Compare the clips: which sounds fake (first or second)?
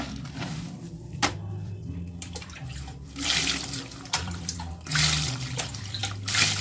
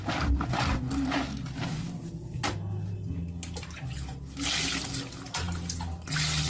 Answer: first